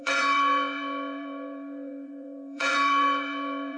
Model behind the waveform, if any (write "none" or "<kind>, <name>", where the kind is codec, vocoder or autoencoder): vocoder, Vocos